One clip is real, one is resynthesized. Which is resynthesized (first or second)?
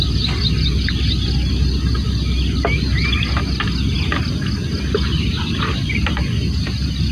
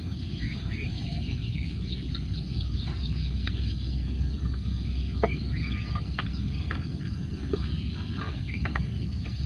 second